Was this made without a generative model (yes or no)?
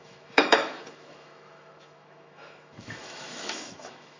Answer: no